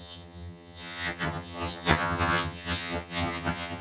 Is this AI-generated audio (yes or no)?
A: yes